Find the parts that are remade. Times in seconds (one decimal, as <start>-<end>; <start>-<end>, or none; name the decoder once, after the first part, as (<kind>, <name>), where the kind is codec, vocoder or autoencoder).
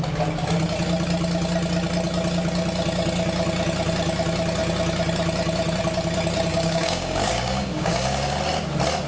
6.5-8.3 (codec, DAC)